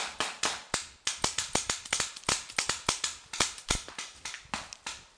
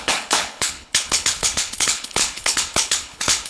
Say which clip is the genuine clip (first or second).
first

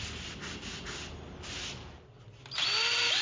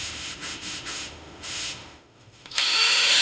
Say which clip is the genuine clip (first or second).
first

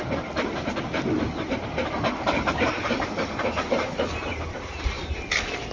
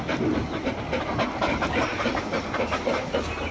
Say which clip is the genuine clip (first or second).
second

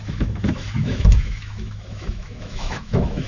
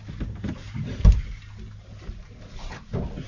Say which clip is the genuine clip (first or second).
second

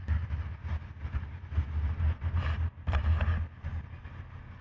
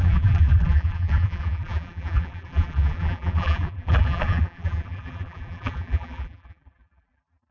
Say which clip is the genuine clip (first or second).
first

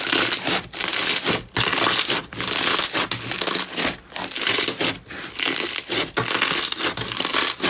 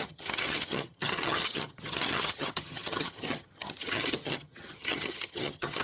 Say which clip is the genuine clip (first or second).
first